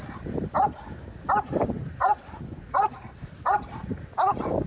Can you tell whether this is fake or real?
real